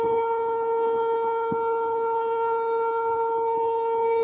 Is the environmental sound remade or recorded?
remade